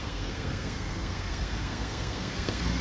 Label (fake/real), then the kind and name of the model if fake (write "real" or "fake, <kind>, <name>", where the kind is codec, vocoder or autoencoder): fake, codec, SNAC